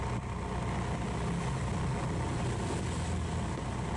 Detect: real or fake real